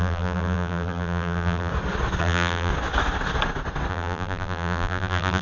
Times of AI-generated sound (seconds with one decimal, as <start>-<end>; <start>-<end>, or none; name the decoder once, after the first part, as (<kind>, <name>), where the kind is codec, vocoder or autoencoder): 0.0-1.7 (vocoder, BigVGAN v2); 2.2-2.7; 3.9-5.4